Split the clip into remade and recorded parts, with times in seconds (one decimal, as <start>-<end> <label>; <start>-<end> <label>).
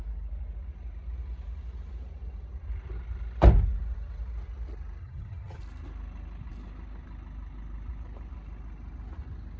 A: 0.0-5.0 recorded; 5.0-5.6 remade; 5.6-9.6 recorded